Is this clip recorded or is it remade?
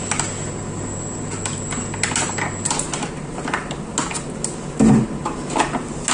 recorded